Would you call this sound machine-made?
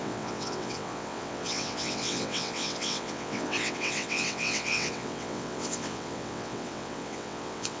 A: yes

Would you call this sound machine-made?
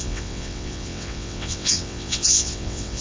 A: yes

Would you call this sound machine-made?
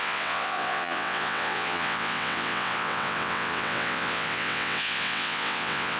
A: yes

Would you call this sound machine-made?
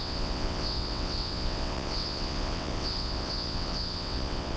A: yes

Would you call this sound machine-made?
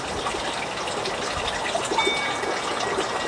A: no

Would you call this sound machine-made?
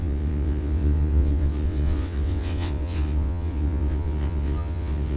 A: yes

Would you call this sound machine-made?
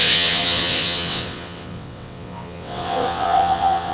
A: yes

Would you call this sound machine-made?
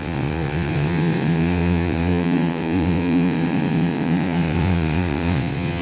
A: yes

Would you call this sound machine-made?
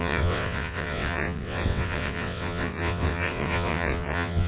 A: yes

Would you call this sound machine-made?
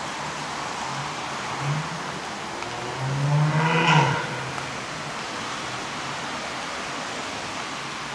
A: no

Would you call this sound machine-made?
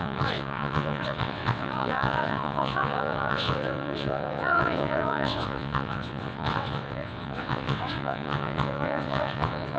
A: yes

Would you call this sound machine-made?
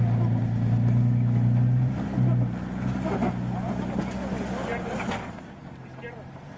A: no